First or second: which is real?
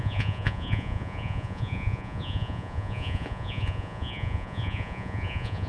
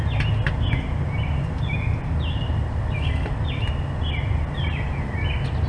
second